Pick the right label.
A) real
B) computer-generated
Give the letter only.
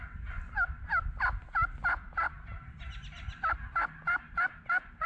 A